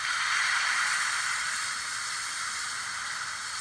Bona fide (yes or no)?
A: yes